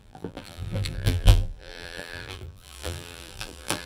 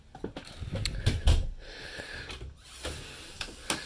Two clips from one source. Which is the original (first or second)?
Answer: second